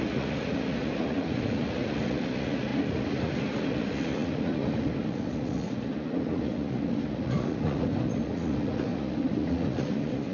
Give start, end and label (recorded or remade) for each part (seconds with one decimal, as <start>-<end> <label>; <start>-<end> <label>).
0.0-10.3 remade

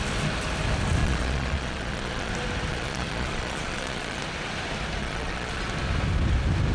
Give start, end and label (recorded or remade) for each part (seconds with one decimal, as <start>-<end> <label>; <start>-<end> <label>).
0.0-1.0 recorded; 1.0-2.3 remade; 2.3-2.7 recorded; 2.7-4.2 remade; 4.2-5.0 recorded; 5.0-5.6 remade; 5.6-6.7 recorded

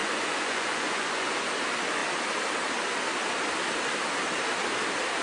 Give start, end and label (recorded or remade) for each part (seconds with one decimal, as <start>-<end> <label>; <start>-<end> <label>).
0.0-1.4 remade; 1.4-5.2 recorded

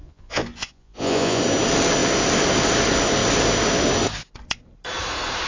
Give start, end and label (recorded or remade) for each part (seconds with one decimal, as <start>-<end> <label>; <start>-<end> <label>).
0.0-1.4 remade; 1.4-5.5 recorded